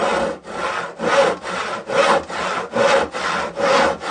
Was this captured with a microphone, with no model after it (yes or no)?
yes